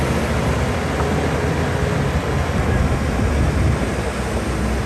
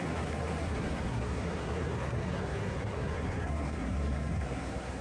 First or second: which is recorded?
first